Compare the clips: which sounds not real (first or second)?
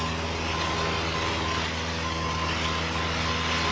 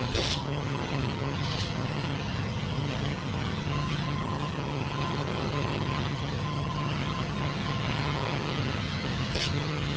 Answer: second